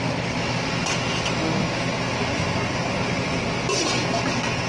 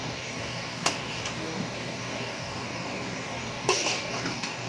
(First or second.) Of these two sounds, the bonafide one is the first